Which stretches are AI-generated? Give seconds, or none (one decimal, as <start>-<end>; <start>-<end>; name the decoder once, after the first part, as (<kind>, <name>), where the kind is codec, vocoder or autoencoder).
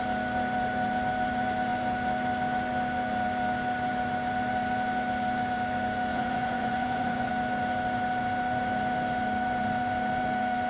6.1-7.3 (vocoder, Vocos)